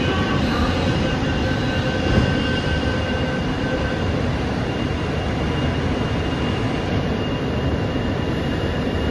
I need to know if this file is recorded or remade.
recorded